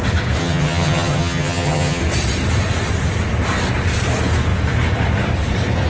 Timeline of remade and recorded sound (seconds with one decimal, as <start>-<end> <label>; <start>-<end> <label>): 0.0-0.4 recorded; 0.4-2.0 remade; 2.0-5.9 recorded